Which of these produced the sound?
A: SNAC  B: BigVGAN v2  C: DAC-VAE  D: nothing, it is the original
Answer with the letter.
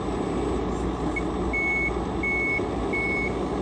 D